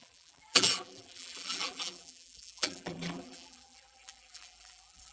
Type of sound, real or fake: fake